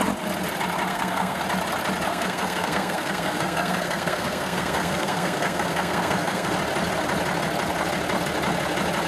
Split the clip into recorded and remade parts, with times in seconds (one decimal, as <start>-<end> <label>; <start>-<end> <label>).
0.0-0.9 recorded; 0.9-1.4 remade; 1.4-2.1 recorded; 2.1-6.5 remade; 6.5-9.1 recorded